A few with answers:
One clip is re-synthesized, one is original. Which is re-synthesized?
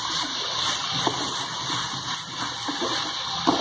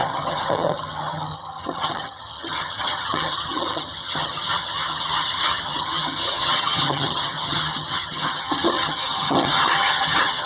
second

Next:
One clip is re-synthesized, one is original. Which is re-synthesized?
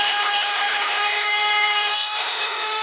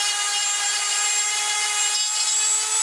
first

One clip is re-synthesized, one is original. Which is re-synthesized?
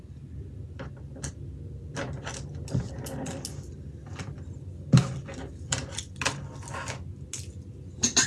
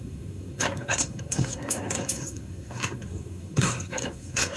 second